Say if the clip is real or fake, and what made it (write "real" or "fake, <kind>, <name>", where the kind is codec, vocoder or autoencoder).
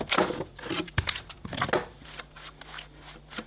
real